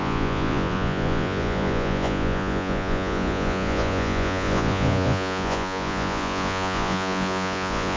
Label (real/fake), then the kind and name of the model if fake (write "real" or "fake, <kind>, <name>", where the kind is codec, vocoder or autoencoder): fake, vocoder, Vocos